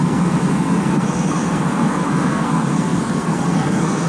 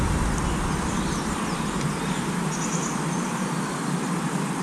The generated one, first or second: first